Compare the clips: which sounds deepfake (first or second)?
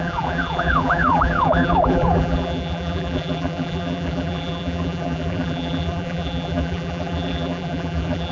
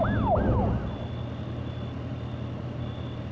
first